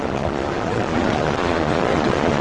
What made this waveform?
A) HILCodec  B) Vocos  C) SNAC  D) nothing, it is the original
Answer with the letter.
B